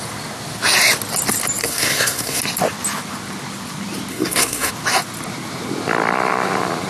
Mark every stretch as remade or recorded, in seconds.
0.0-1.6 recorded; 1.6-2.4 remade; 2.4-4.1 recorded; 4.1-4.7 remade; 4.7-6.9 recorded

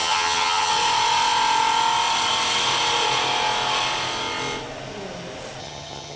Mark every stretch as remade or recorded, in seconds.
0.0-0.7 remade; 0.7-5.6 recorded; 5.6-6.2 remade

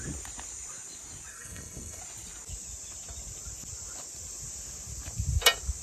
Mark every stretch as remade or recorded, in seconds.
0.0-1.3 recorded; 1.3-2.0 remade; 2.0-5.8 recorded

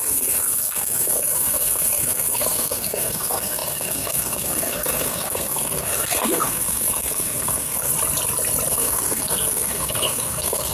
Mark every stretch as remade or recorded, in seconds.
0.0-7.9 remade; 7.9-8.7 recorded; 8.7-10.7 remade

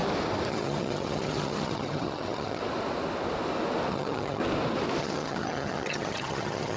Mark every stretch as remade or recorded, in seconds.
0.0-0.5 recorded; 0.5-2.6 remade; 2.6-3.9 recorded; 3.9-4.4 remade; 4.4-5.0 recorded; 5.0-6.8 remade

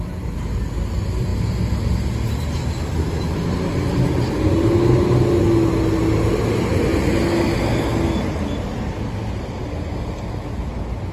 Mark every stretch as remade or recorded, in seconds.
0.0-11.1 recorded